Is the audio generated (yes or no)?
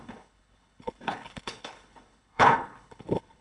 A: yes